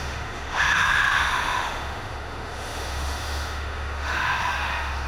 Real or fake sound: fake